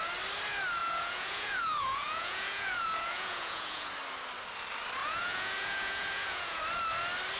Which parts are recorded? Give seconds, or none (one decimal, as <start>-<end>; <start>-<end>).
0.0-0.8; 3.9-5.0; 6.6-7.4